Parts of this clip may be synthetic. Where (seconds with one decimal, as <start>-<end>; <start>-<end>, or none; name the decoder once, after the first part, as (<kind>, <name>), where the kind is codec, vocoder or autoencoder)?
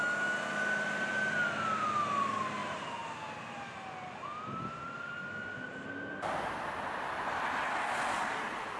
none